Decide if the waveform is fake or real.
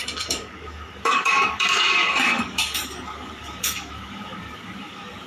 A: fake